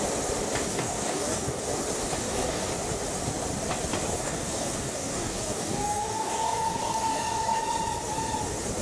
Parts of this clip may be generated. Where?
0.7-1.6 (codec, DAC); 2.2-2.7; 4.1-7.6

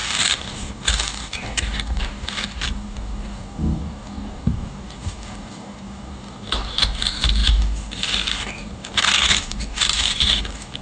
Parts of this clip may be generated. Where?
0.0-10.8 (codec, DAC)

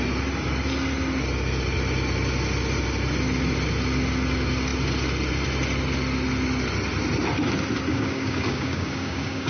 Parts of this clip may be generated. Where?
7.9-9.5 (codec, DAC)

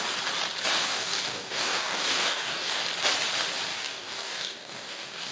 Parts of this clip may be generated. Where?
0.7-2.8 (codec, DAC); 3.7-5.3

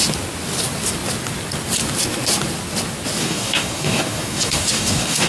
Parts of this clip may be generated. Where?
3.2-5.3 (codec, DAC)